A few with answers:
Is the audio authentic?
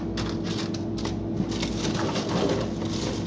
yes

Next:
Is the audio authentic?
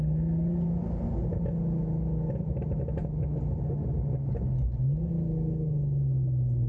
yes